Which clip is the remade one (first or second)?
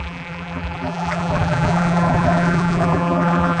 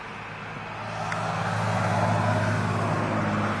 first